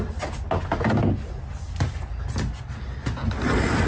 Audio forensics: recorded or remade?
recorded